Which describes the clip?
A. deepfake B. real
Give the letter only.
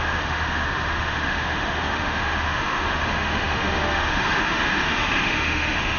A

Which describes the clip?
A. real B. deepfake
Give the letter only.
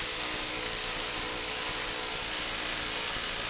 A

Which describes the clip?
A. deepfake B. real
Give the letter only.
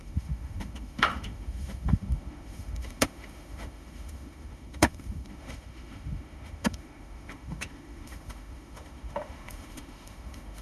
A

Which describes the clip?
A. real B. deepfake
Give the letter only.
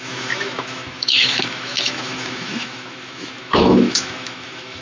B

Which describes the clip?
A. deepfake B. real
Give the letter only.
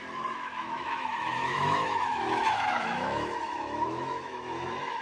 A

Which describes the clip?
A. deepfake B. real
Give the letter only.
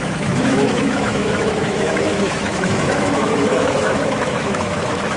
A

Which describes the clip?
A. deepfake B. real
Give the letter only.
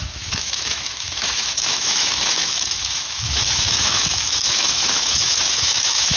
A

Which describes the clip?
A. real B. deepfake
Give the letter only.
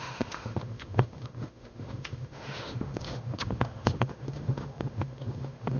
B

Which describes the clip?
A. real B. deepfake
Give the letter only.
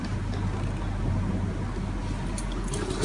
A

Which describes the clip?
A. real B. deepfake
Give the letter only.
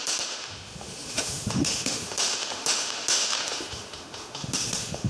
B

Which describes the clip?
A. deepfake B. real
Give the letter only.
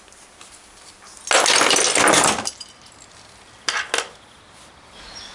B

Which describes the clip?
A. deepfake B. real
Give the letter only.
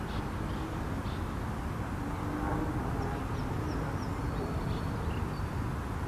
B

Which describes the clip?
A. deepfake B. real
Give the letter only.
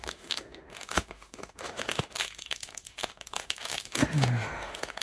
A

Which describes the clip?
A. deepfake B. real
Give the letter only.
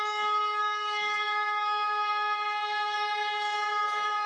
A